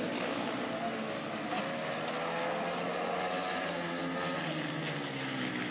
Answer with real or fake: real